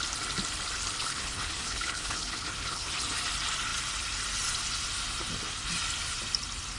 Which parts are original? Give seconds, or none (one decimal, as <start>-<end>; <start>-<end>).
0.0-1.0; 2.9-6.8